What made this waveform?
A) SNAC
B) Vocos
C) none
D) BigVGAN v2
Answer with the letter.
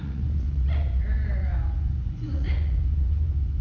B